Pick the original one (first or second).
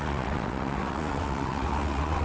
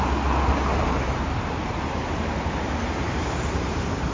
second